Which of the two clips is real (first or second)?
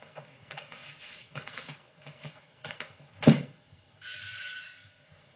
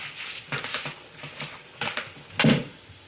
second